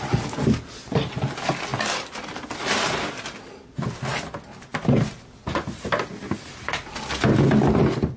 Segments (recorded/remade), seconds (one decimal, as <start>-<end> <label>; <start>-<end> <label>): 0.0-8.2 recorded